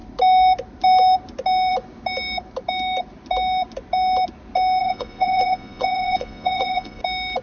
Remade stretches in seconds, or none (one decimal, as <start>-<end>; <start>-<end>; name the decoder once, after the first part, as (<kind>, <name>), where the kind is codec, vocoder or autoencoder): 4.8-7.0 (vocoder, Vocos)